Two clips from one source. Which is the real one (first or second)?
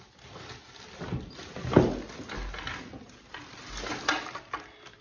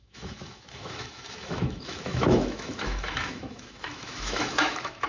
first